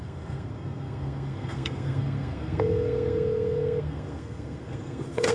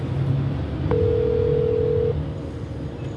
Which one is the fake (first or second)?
first